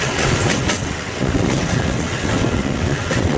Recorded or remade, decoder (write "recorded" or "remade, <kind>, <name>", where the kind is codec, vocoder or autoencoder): remade, vocoder, WaveNeXt